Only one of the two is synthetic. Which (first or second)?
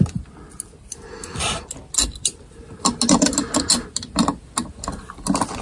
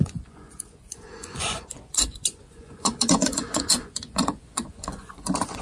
second